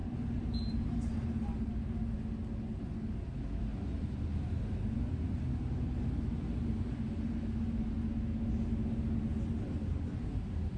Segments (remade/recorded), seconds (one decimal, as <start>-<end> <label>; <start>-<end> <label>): 0.0-10.8 recorded